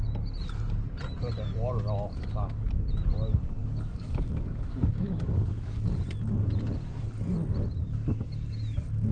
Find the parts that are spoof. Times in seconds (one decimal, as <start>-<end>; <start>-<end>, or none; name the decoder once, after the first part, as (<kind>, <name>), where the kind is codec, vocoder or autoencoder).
2.1-2.7 (codec, DAC); 3.6-6.0